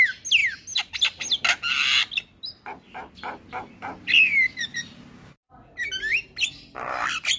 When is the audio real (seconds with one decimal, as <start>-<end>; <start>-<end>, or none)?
0.0-7.4